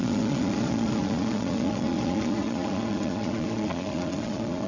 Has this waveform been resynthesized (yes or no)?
yes